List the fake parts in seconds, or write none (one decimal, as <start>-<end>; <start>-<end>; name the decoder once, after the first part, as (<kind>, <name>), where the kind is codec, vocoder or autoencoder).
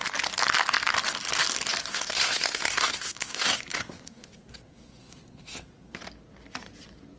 1.9-6.0 (codec, SNAC)